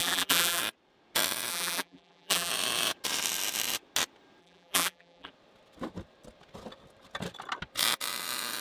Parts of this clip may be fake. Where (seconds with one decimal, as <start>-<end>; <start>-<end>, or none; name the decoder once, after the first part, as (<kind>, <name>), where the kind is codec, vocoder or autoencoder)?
0.0-0.6 (vocoder, BigVGAN v2); 1.5-2.5; 4.4-5.3